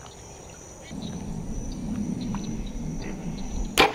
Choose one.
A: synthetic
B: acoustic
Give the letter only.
B